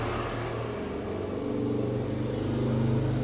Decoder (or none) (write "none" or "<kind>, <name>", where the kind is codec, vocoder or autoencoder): none